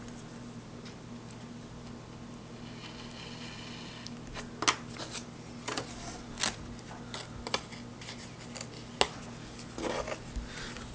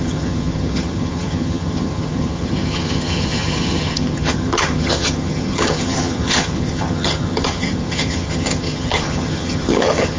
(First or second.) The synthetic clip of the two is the second